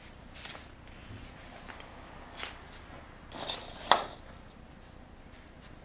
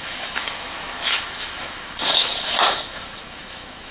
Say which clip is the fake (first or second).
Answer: second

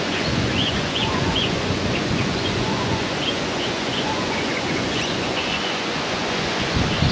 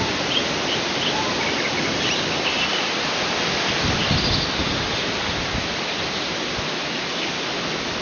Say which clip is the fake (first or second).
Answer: first